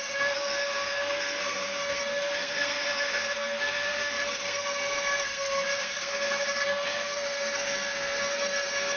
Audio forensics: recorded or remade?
remade